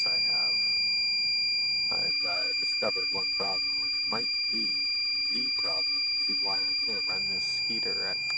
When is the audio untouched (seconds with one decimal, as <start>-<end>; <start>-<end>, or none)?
0.0-2.1; 7.1-8.4